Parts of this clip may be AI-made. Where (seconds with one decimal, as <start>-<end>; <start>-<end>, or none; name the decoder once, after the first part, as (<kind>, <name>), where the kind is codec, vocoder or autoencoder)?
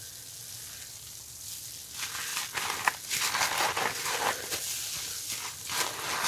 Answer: none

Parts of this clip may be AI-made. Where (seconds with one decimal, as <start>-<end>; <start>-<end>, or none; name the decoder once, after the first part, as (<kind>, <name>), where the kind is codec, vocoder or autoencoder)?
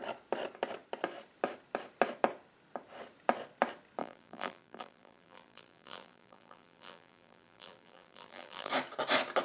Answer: 4.0-8.7 (vocoder, BigVGAN v2)